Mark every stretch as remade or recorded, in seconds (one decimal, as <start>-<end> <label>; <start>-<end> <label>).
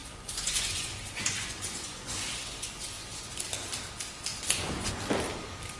0.0-3.5 remade; 3.5-4.3 recorded; 4.3-5.0 remade; 5.0-5.8 recorded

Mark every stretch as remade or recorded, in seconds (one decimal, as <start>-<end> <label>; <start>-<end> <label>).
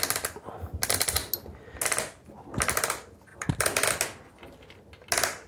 0.0-3.3 recorded; 3.3-3.9 remade; 3.9-5.5 recorded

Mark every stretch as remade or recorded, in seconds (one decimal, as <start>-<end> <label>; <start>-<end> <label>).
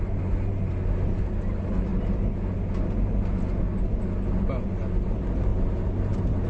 0.0-5.5 recorded; 5.5-6.5 remade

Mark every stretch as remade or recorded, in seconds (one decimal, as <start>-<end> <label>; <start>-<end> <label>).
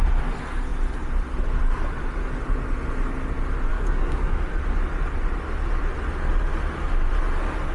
0.0-3.7 recorded; 3.7-4.4 remade; 4.4-7.7 recorded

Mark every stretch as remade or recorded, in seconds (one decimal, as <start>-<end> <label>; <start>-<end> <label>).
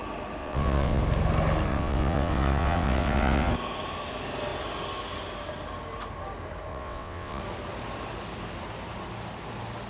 0.0-0.4 recorded; 0.4-1.0 remade; 1.0-1.7 recorded; 1.7-3.5 remade; 3.5-6.7 recorded; 6.7-7.4 remade; 7.4-9.9 recorded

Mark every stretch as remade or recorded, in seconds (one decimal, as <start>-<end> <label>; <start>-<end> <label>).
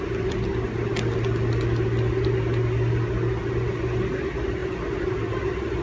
0.0-5.8 recorded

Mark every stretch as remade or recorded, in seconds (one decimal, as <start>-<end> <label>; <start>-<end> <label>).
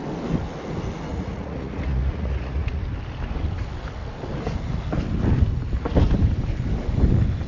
0.0-1.1 recorded; 1.1-2.8 remade; 2.8-7.5 recorded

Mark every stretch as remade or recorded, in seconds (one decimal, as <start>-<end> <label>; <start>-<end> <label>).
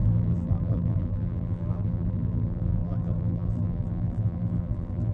0.0-5.1 remade